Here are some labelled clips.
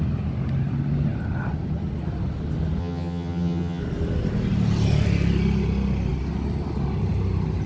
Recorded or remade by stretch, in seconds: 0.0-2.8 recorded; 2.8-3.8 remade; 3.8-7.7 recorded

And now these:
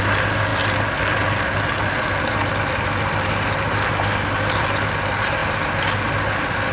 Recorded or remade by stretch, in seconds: 0.0-6.7 recorded